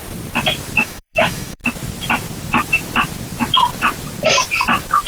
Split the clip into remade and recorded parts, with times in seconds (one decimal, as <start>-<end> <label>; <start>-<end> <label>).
0.0-0.8 recorded; 0.8-1.6 remade; 1.6-5.1 recorded